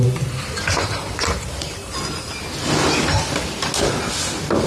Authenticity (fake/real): real